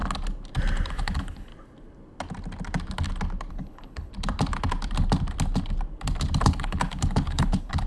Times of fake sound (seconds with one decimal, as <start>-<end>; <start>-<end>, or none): 0.9-1.5; 3.5-4.1; 6.4-7.9